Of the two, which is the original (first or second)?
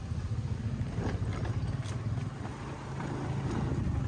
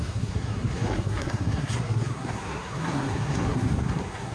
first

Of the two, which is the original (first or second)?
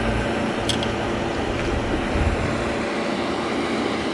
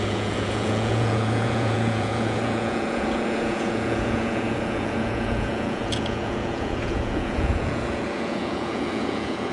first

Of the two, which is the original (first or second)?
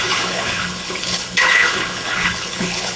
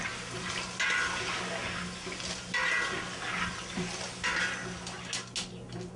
second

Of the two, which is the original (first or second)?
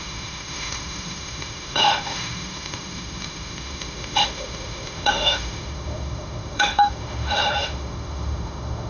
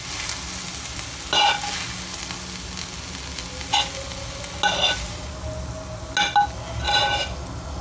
second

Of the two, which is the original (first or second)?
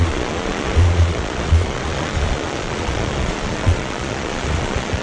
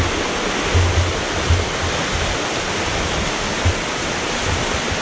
second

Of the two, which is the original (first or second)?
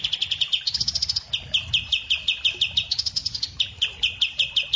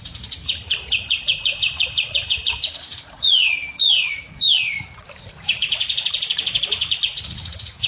first